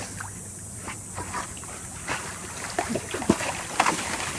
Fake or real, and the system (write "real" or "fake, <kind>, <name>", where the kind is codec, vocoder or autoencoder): real